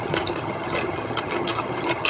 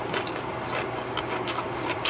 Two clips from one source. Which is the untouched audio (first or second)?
second